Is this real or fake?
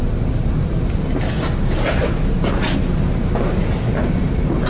real